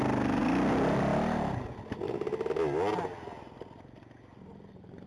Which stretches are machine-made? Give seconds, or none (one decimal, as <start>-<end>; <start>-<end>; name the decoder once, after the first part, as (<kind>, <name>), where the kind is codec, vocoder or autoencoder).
none